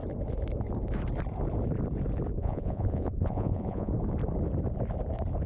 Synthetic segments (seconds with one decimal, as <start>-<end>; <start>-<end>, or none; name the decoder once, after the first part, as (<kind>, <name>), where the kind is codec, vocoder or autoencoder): 2.4-3.9 (vocoder, Vocos)